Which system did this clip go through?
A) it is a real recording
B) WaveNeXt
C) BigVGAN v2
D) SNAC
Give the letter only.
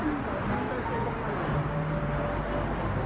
A